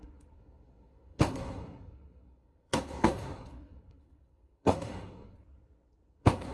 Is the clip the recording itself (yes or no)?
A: no